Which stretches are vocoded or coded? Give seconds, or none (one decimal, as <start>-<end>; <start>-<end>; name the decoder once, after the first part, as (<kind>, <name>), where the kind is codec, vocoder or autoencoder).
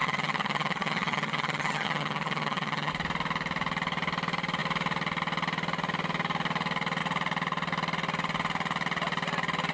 0.0-2.9 (vocoder, HiFi-GAN)